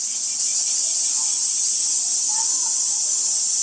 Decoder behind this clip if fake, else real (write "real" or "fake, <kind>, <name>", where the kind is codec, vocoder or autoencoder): real